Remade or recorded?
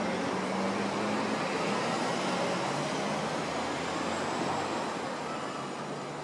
recorded